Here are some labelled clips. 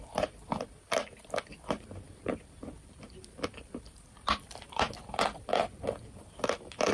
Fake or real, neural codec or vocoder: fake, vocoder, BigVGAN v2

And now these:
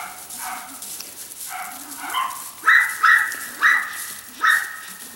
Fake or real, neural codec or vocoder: real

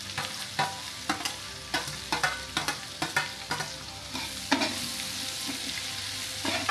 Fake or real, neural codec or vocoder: real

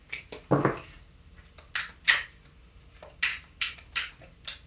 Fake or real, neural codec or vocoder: real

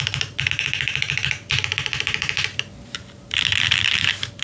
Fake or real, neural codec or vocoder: fake, vocoder, BigVGAN v2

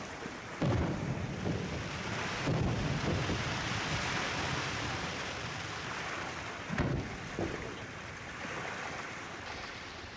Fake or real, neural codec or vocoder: fake, vocoder, BigVGAN v2